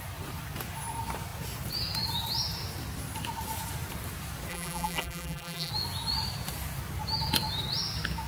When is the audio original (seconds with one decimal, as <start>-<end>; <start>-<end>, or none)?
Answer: 0.0-4.5; 5.7-8.3